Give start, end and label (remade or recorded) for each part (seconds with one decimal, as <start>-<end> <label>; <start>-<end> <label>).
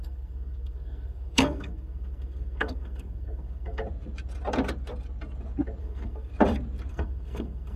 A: 0.0-3.8 remade; 3.8-5.8 recorded; 5.8-6.3 remade; 6.3-6.9 recorded; 6.9-7.8 remade